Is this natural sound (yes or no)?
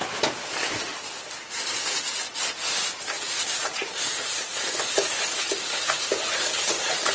yes